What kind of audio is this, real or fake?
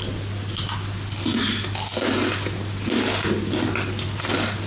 real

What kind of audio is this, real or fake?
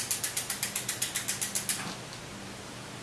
real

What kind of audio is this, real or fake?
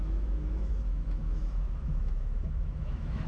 fake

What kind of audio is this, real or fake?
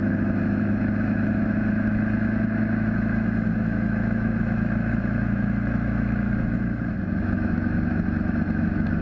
fake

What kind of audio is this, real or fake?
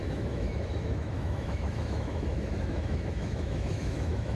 fake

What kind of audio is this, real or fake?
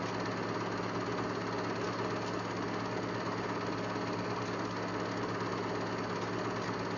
real